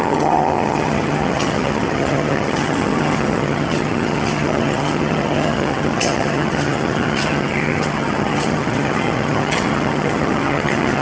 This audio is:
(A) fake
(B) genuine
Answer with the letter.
A